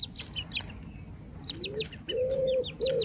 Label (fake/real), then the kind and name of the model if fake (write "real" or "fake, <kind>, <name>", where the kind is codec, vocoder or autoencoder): real